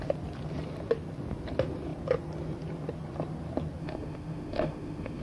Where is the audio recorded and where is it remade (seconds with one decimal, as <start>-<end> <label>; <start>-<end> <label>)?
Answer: 0.0-3.8 recorded; 3.8-5.2 remade